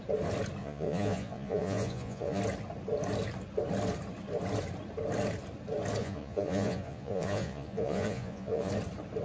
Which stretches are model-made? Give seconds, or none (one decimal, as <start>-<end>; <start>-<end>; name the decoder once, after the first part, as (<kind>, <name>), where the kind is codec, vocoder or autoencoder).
0.6-2.4 (vocoder, Vocos); 6.0-8.7